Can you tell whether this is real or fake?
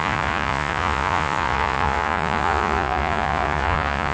fake